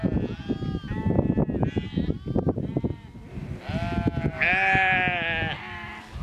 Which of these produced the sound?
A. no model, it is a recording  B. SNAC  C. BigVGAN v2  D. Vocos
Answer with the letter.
A